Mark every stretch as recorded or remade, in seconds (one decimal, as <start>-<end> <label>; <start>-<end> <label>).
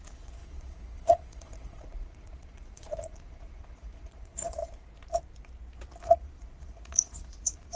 0.0-4.6 remade; 4.6-6.2 recorded; 6.2-7.8 remade